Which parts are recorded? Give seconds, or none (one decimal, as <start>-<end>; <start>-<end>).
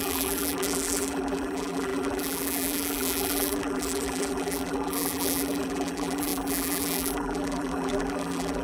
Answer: none